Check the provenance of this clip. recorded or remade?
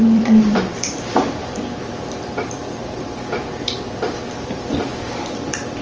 remade